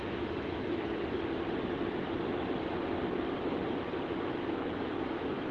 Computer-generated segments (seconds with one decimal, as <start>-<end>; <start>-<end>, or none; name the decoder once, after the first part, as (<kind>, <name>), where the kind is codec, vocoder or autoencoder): 0.0-0.8 (autoencoder, DAC-VAE); 4.1-5.5